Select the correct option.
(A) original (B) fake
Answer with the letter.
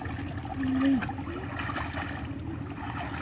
A